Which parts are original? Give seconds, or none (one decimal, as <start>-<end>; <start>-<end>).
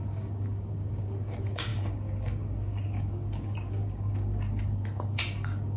none